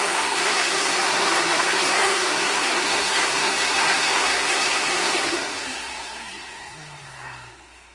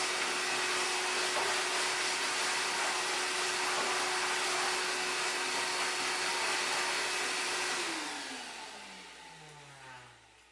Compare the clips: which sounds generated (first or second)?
first